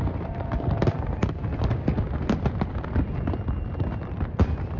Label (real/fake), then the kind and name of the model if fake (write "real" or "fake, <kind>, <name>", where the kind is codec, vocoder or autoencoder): fake, vocoder, BigVGAN v2